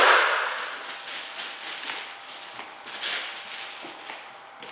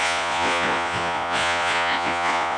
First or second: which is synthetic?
second